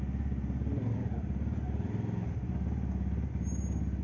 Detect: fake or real real